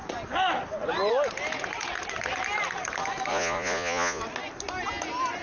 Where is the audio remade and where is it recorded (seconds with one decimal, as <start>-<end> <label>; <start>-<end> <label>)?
0.0-3.3 recorded; 3.3-4.2 remade; 4.2-5.4 recorded